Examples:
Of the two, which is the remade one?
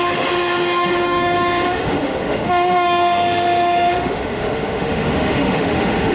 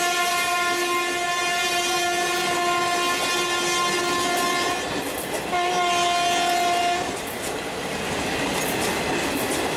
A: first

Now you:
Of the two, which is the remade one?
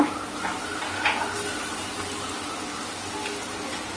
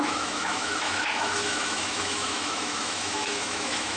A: second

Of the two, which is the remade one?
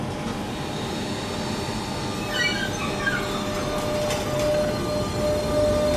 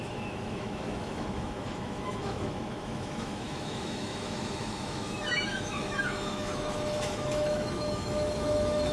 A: second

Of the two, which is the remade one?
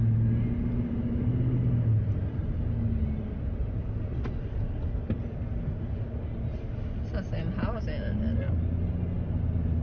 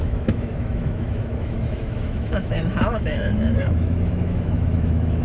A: second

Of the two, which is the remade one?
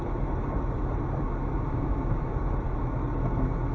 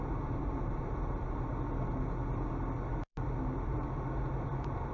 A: first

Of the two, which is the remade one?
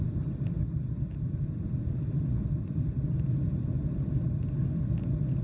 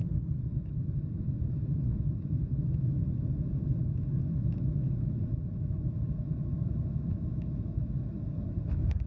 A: second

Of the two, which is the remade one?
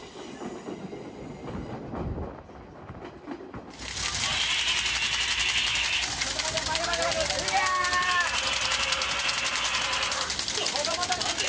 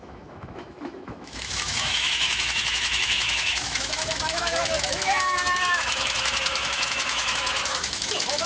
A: second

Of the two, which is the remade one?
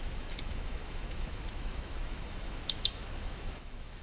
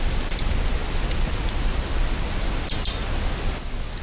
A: first